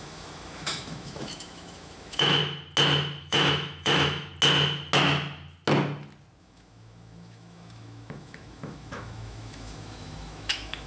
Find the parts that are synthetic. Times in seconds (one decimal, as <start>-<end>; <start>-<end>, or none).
0.0-2.4; 3.2-4.3; 6.4-10.9